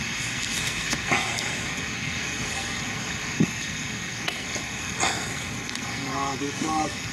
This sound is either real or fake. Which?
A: fake